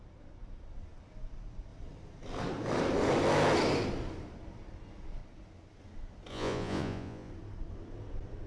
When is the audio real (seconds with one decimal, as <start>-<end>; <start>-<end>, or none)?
0.0-6.3; 7.3-8.5